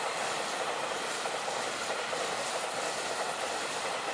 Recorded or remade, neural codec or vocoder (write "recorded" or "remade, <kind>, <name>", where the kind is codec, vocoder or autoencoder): recorded